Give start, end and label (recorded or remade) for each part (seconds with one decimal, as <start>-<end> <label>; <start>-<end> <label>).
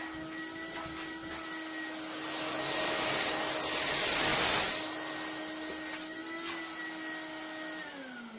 0.0-8.4 recorded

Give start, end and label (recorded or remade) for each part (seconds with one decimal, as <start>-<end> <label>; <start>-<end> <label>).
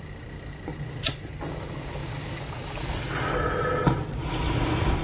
0.0-5.0 recorded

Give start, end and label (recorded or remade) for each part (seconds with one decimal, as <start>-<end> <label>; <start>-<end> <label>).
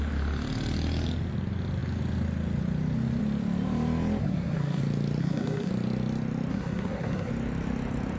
0.0-4.2 recorded; 4.2-4.8 remade; 4.8-5.2 recorded; 5.2-5.7 remade; 5.7-6.5 recorded; 6.5-7.3 remade; 7.3-8.2 recorded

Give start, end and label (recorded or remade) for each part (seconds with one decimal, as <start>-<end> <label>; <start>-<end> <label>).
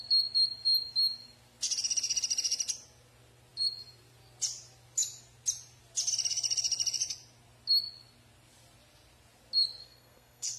0.0-9.8 recorded; 9.8-10.6 remade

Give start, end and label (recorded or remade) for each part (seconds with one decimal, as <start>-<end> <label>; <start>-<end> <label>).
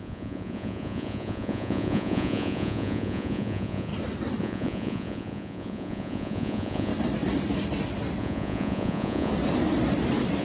0.0-3.9 remade; 3.9-4.4 recorded; 4.4-6.9 remade; 6.9-8.2 recorded; 8.2-9.3 remade; 9.3-10.4 recorded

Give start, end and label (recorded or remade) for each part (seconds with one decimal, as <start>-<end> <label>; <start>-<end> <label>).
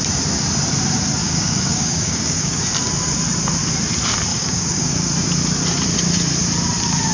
0.0-1.2 recorded; 1.2-2.6 remade; 2.6-4.3 recorded; 4.3-5.1 remade; 5.1-7.1 recorded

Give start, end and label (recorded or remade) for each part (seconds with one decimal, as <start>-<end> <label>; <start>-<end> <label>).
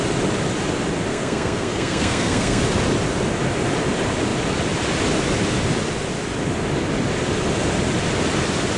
0.0-1.1 recorded; 1.1-2.6 remade; 2.6-8.8 recorded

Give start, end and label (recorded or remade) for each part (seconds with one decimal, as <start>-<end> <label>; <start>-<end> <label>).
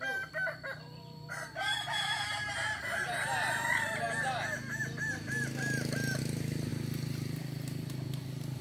0.0-8.6 recorded